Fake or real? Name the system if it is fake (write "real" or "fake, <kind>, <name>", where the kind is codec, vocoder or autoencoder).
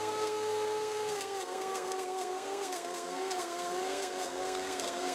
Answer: fake, codec, SNAC